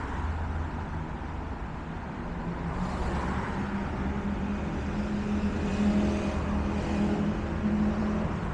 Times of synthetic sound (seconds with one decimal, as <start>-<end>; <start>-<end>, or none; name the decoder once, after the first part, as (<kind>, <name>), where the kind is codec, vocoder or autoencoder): none